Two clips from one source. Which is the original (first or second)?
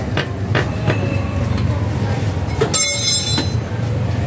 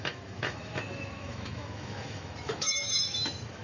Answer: first